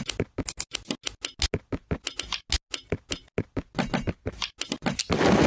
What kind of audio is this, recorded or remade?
recorded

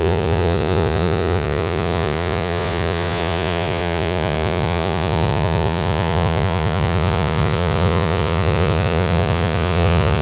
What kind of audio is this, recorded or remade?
remade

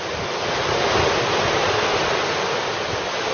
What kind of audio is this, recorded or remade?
recorded